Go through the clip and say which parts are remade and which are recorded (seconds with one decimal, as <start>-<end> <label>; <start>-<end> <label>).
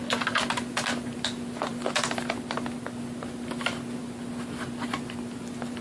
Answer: 0.0-5.8 recorded